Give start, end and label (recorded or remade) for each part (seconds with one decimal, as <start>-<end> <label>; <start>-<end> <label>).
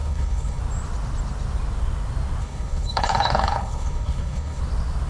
0.0-0.6 remade; 0.6-2.4 recorded; 2.4-4.6 remade; 4.6-5.1 recorded